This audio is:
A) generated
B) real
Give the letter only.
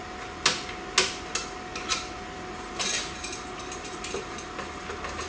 B